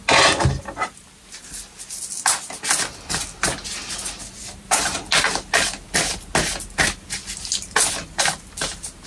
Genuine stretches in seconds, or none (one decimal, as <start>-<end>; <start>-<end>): 0.0-4.4; 4.9-9.1